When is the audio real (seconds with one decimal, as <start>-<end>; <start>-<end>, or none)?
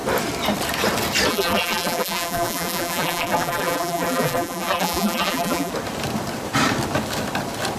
0.0-1.3; 5.7-7.8